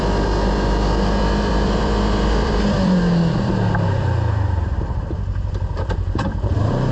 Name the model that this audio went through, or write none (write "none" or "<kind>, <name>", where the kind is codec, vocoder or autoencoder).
vocoder, BigVGAN v2